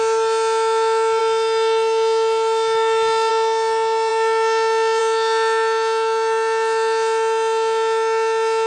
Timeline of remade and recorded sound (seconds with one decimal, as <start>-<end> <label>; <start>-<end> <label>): 0.0-8.7 recorded